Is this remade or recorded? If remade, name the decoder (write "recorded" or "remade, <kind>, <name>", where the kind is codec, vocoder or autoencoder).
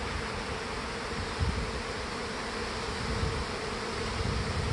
recorded